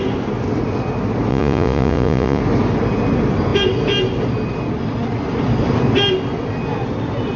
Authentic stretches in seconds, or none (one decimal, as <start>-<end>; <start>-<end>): 0.0-1.3; 2.4-7.4